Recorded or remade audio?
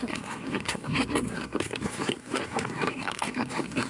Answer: remade